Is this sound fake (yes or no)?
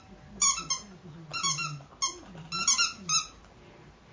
no